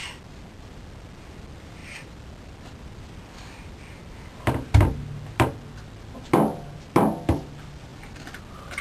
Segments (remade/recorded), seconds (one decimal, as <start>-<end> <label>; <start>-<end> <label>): 0.0-8.8 remade